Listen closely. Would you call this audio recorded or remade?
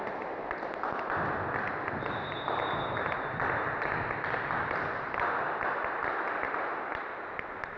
recorded